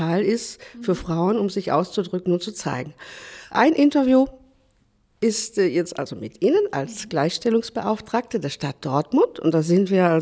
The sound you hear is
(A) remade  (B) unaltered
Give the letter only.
B